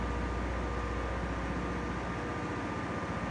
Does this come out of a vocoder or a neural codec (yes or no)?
no